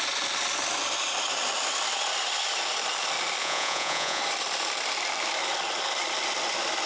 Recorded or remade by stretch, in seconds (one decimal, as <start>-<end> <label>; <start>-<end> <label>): 0.0-3.4 recorded; 3.4-4.2 remade; 4.2-6.9 recorded